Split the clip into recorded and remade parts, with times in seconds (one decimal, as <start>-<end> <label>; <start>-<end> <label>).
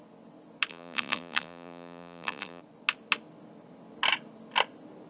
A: 0.0-0.7 recorded; 0.7-2.6 remade; 2.6-5.1 recorded